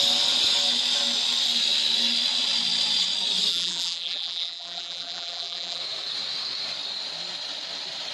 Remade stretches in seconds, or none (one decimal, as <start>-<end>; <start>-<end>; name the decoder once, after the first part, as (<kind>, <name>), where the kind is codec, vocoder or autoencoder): 3.5-5.8 (vocoder, BigVGAN v2)